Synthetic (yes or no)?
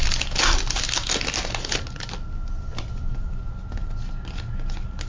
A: no